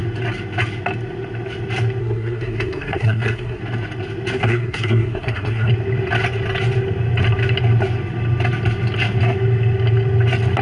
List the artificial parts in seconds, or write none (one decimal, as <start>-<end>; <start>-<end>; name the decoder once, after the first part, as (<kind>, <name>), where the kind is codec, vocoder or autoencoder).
2.0-3.6 (codec, SNAC); 4.4-5.7